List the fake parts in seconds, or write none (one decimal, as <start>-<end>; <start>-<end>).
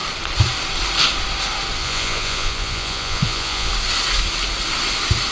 1.8-3.7